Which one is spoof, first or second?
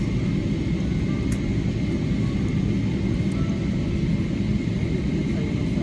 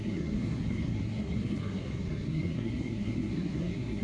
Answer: second